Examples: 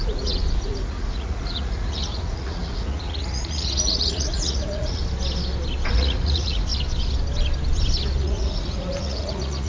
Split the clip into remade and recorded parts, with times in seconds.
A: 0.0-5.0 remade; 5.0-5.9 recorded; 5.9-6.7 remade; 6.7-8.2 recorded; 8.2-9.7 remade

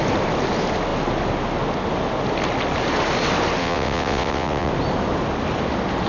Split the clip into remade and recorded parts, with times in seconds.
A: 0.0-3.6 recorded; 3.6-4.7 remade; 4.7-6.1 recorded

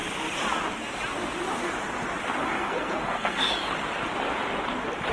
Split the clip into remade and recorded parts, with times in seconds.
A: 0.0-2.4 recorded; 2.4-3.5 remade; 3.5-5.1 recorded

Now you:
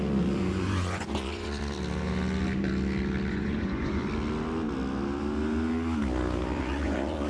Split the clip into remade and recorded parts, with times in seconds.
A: 0.0-1.6 remade; 1.6-3.3 recorded; 3.3-4.0 remade; 4.0-6.6 recorded; 6.6-7.3 remade

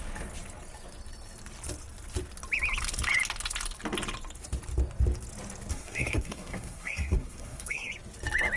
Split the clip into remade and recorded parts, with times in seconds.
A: 0.0-5.7 recorded; 5.7-7.9 remade; 7.9-8.6 recorded

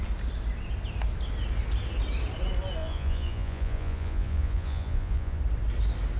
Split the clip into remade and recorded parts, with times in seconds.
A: 0.0-2.8 recorded; 2.8-5.4 remade; 5.4-6.2 recorded

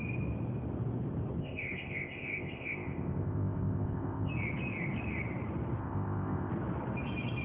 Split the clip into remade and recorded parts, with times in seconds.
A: 0.0-1.4 recorded; 1.4-4.3 remade; 4.3-5.8 recorded; 5.8-6.5 remade; 6.5-7.4 recorded